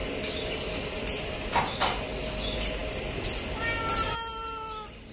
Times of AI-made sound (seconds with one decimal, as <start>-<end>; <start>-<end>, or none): none